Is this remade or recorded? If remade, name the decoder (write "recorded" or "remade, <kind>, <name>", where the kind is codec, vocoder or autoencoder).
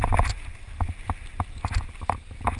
recorded